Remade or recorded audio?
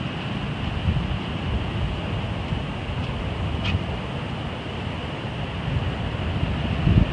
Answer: recorded